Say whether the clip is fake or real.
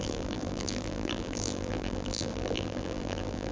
fake